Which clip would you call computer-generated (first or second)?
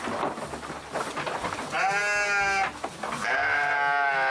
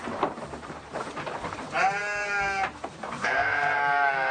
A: second